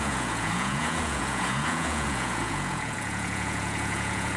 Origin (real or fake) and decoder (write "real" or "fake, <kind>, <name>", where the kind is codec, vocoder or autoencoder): fake, vocoder, Vocos